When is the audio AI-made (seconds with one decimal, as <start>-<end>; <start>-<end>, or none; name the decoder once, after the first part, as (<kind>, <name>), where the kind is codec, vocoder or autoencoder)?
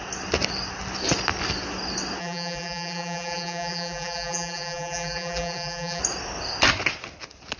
2.2-6.0 (vocoder, BigVGAN v2)